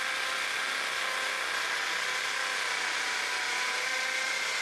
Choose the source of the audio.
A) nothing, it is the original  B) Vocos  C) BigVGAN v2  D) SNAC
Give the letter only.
A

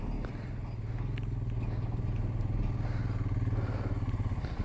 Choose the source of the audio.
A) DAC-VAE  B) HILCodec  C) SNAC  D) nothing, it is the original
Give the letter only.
D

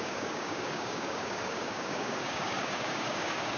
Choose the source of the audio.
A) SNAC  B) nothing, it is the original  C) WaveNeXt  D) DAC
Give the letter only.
D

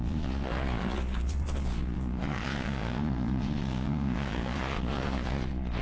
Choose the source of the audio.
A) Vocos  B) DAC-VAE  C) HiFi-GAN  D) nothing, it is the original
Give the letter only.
A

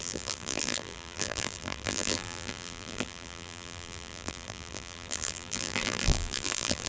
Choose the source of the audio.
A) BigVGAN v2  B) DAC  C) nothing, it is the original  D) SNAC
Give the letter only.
A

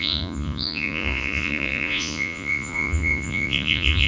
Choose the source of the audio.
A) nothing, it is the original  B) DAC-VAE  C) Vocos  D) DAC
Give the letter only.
C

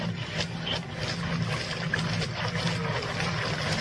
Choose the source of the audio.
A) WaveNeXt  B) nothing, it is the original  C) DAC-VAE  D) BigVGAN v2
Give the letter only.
B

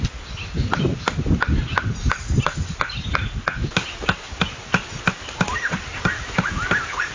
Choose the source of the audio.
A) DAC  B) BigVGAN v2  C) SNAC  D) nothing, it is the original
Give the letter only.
D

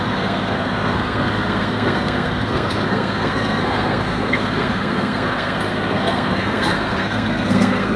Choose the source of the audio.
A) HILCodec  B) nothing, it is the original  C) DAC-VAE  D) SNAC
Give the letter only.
D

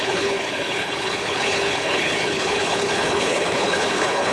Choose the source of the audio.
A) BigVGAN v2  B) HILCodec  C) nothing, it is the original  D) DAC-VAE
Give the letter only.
B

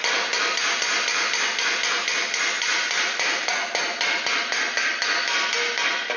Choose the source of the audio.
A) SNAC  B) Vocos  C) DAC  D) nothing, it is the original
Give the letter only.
D